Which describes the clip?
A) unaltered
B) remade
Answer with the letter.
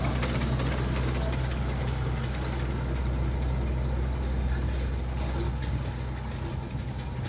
A